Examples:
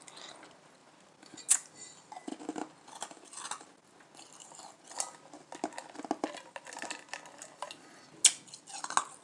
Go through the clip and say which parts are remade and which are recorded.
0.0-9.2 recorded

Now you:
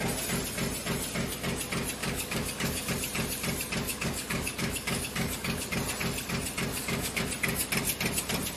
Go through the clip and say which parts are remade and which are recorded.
0.0-2.0 recorded; 2.0-2.9 remade; 2.9-3.9 recorded; 3.9-5.7 remade; 5.7-6.7 recorded; 6.7-7.2 remade; 7.2-8.6 recorded

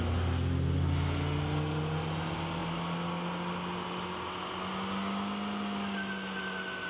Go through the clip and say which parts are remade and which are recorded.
0.0-6.9 recorded